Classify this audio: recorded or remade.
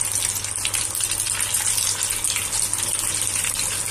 recorded